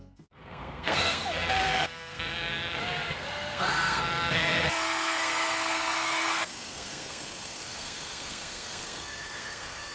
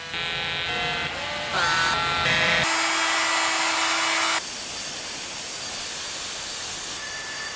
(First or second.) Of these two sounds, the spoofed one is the first